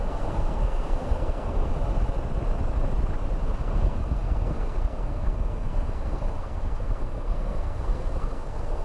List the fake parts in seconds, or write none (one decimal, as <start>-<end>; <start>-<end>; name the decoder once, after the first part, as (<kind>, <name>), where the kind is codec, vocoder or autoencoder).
0.0-1.7 (codec, SNAC); 3.4-8.8